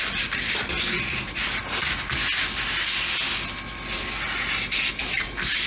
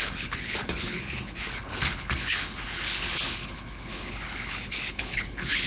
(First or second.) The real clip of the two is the first